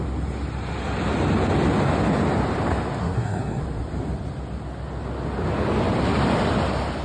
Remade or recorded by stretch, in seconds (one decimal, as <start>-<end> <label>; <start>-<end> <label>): 0.0-3.0 recorded; 3.0-3.6 remade; 3.6-7.0 recorded